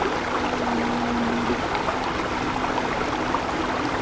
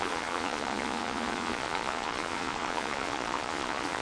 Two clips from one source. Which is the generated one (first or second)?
second